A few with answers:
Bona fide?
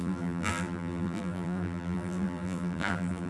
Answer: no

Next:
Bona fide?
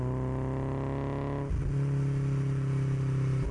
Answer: yes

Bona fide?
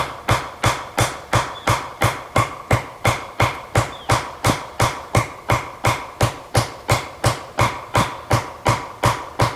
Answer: yes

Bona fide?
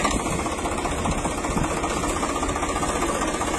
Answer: yes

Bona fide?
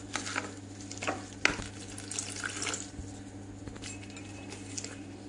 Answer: yes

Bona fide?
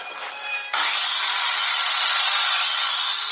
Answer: yes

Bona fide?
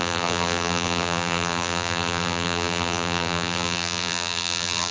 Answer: no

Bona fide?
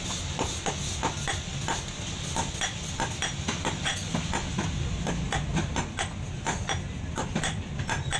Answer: yes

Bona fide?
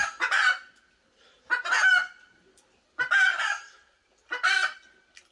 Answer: yes